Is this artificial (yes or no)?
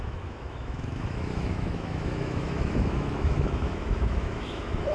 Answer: yes